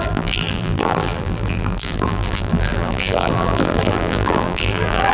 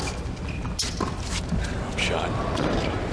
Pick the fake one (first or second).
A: first